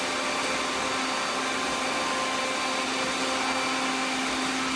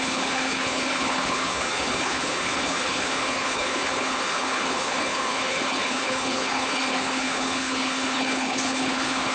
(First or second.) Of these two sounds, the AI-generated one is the second